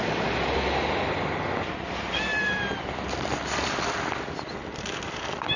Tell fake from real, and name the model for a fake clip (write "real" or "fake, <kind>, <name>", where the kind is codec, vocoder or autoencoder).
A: real